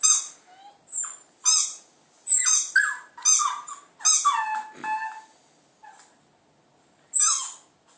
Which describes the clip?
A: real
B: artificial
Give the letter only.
A